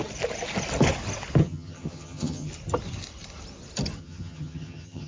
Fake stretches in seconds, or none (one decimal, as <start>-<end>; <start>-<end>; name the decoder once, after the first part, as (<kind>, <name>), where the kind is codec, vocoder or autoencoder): 1.4-2.5 (vocoder, HiFi-GAN); 4.0-5.1